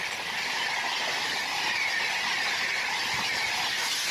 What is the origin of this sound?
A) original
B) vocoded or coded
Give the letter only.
A